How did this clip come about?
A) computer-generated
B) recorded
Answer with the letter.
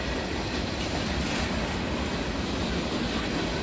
B